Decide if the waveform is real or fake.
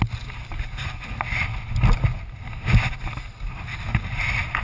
real